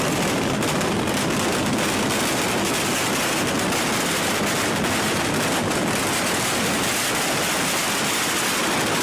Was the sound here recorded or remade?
recorded